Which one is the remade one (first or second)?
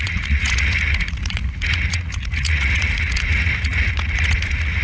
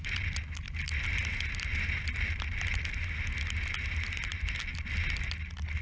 first